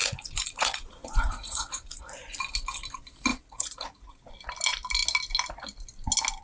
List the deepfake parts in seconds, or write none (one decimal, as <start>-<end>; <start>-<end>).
0.0-2.0; 3.3-4.3